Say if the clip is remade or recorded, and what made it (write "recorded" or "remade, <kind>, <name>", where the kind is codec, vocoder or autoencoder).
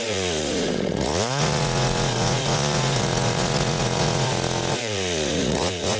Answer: remade, vocoder, Vocos